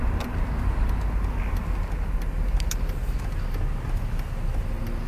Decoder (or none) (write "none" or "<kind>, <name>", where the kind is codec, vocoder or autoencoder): none